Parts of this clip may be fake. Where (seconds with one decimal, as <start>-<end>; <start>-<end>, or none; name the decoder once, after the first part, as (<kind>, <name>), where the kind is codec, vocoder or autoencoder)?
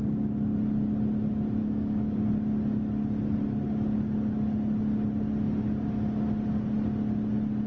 1.6-2.3 (codec, DAC)